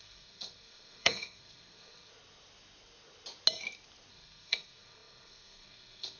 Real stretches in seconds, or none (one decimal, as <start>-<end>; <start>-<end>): 2.1-4.1